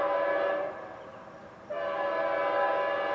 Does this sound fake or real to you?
real